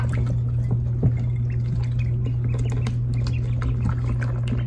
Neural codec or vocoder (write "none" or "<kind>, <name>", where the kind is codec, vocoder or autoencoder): none